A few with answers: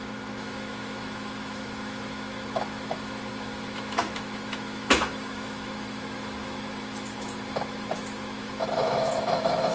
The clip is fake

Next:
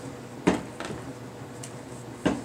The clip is real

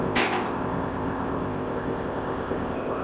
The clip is fake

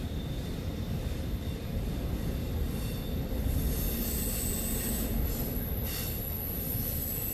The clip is real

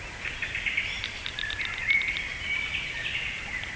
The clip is real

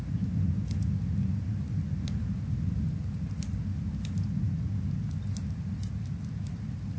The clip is real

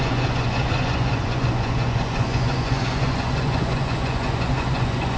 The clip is fake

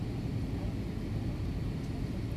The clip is real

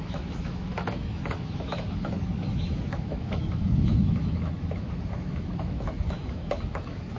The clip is fake